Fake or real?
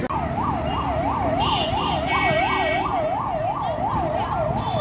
real